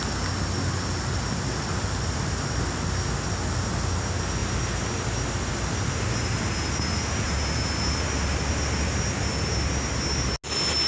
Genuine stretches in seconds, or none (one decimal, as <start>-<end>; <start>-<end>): 0.0-10.9